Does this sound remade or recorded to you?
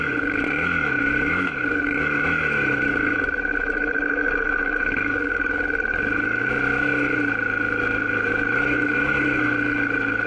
remade